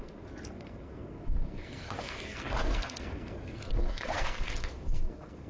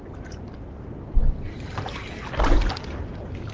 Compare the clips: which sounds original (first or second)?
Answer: second